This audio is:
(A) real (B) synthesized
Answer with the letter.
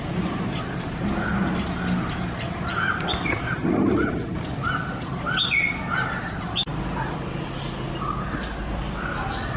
A